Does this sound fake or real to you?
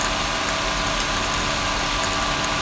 real